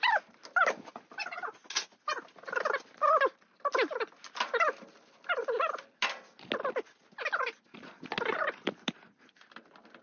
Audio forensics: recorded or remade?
recorded